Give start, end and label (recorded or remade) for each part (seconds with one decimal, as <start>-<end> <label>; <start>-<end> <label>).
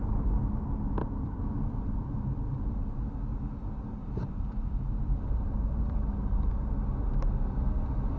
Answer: 0.0-1.0 recorded; 1.0-2.9 remade; 2.9-4.0 recorded; 4.0-6.5 remade; 6.5-8.2 recorded